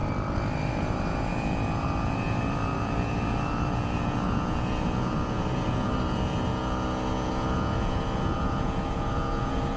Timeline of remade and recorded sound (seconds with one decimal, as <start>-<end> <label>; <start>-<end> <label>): 0.0-0.7 recorded; 0.7-9.8 remade